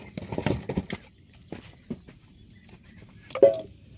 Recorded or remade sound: recorded